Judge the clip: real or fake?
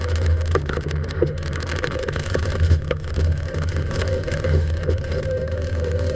fake